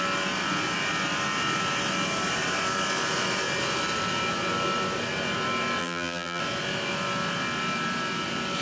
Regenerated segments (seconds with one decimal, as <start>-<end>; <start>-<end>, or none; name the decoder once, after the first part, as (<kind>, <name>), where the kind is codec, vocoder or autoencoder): 5.8-6.4 (vocoder, BigVGAN v2)